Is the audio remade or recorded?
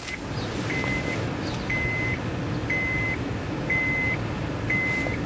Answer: recorded